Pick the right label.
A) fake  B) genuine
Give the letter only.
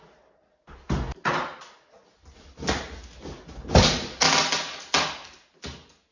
B